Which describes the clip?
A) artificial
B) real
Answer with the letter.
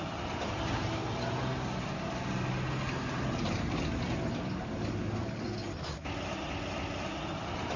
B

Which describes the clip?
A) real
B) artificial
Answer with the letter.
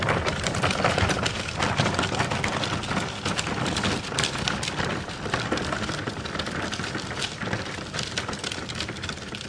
B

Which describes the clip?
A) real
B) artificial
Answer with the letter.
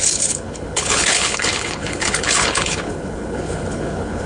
B